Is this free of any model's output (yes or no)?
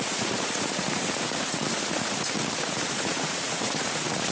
no